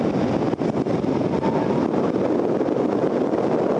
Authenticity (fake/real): real